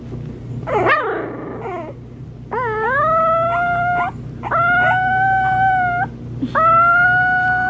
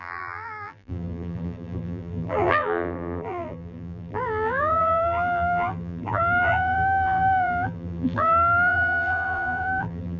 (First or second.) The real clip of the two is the first